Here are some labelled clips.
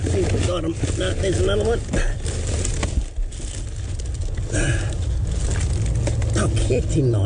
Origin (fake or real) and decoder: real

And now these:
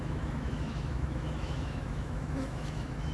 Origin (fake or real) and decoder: fake, autoencoder, DAC-VAE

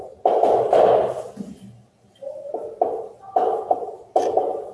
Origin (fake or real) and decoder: real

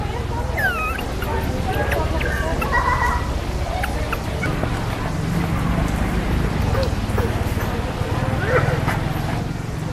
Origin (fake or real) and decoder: real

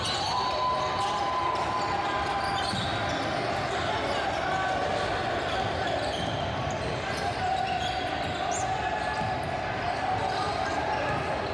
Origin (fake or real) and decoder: real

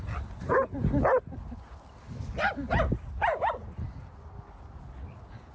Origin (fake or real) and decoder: real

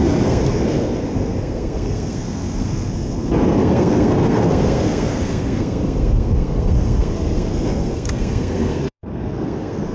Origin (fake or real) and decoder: fake, codec, SNAC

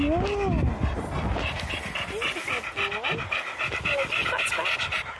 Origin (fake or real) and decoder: real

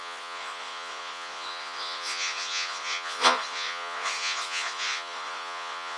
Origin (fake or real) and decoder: fake, vocoder, Vocos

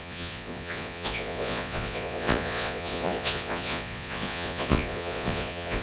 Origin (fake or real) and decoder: fake, vocoder, Vocos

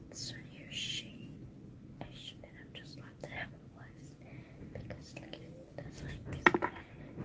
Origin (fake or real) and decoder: real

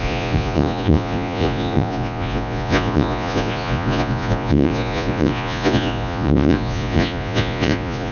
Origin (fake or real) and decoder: fake, vocoder, Vocos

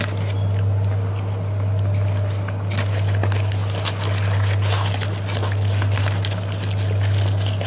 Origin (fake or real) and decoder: real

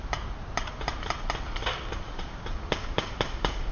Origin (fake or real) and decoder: real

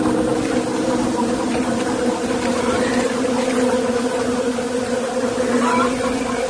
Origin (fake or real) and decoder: real